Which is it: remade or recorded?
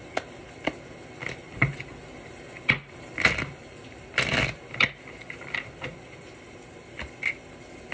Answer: recorded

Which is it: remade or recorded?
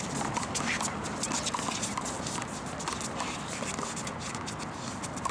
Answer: recorded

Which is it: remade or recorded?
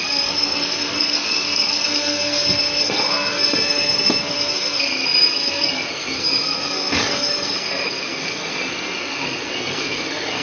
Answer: remade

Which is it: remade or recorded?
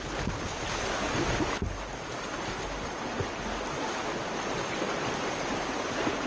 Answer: recorded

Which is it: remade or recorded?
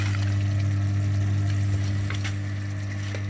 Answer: recorded